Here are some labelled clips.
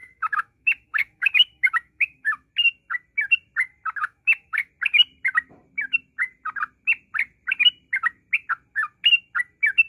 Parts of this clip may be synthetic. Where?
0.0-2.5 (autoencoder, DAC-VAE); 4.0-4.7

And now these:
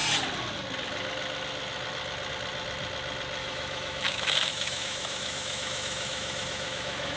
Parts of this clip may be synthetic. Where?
3.4-7.2 (autoencoder, DAC-VAE)